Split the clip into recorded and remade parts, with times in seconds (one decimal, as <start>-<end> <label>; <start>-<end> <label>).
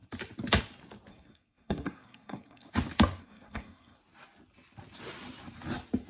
0.0-1.1 recorded; 1.1-2.7 remade; 2.7-3.2 recorded; 3.2-4.0 remade; 4.0-6.1 recorded